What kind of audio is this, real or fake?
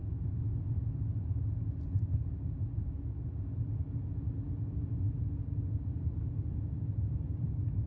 real